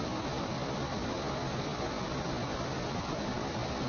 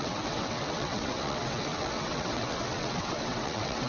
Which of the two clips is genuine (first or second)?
first